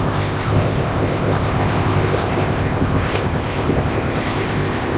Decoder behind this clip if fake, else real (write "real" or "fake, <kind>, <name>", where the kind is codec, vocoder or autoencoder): fake, codec, ZipCodec